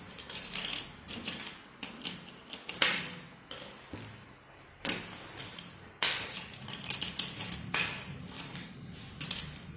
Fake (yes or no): no